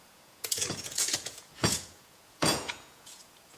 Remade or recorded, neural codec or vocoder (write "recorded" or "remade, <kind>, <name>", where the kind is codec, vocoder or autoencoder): remade, vocoder, Vocos